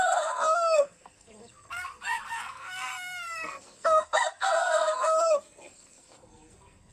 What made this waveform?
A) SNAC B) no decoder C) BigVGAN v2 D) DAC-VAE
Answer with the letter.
A